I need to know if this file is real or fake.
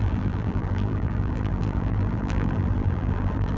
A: fake